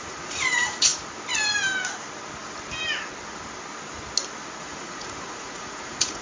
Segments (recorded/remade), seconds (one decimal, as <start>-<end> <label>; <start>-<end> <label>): 0.0-0.9 remade; 0.9-4.6 recorded; 4.6-6.2 remade